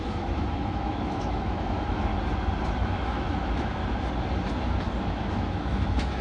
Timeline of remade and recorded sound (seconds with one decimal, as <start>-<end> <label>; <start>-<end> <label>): 0.0-2.1 remade; 2.1-2.8 recorded; 2.8-3.8 remade; 3.8-5.0 recorded; 5.0-6.2 remade